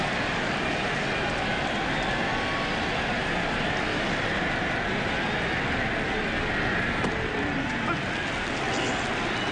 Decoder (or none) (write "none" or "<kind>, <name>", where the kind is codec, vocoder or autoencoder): none